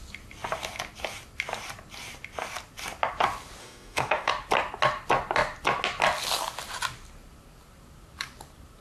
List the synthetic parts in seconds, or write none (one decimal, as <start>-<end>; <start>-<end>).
3.6-4.3